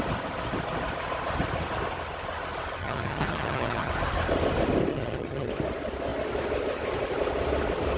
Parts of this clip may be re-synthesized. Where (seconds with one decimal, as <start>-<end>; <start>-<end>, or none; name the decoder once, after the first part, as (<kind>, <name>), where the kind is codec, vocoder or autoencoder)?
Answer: 2.8-3.9 (vocoder, HiFi-GAN); 4.9-5.5